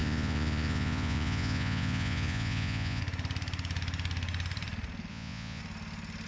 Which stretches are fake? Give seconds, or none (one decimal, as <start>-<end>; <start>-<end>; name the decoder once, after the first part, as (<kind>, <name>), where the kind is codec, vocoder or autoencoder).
0.0-3.0 (vocoder, Vocos); 5.1-5.6